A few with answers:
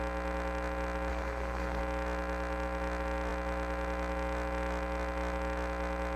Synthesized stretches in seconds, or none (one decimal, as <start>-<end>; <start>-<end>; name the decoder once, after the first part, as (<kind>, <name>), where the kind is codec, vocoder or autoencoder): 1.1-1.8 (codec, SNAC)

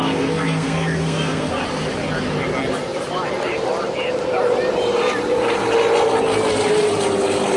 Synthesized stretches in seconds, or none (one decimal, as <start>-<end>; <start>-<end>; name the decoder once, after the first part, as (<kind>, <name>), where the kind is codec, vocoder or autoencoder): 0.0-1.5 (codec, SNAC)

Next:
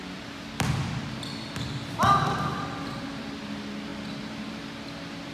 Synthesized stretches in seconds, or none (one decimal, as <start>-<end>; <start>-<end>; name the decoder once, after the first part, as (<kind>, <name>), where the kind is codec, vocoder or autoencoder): none

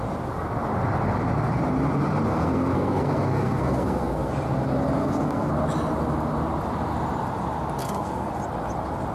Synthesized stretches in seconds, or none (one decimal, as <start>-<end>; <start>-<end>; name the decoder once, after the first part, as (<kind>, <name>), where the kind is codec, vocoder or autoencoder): 2.3-4.3 (codec, SNAC); 5.0-5.5; 7.8-8.3

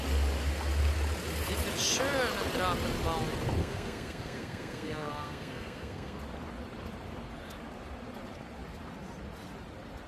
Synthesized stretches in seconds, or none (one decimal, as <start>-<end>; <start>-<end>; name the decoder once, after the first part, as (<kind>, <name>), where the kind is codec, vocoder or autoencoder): 3.6-6.2 (codec, SNAC)

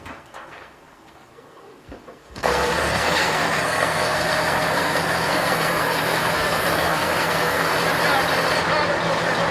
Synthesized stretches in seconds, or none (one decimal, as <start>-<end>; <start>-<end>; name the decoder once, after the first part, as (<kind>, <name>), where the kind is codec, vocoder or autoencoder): 0.0-7.7 (codec, SNAC)

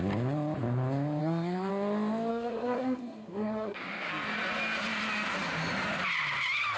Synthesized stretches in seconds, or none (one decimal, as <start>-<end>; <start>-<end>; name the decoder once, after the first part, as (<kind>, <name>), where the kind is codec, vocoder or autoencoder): 1.2-1.7 (codec, SNAC); 2.3-4.1

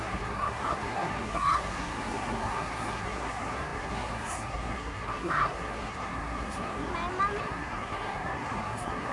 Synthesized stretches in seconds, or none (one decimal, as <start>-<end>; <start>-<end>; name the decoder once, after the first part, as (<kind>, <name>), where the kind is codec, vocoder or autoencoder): 0.0-6.9 (codec, SNAC); 7.4-9.1